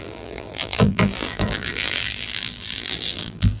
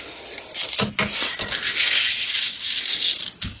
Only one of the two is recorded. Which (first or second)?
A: second